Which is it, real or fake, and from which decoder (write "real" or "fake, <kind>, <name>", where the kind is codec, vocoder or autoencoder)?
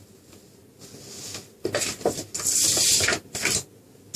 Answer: real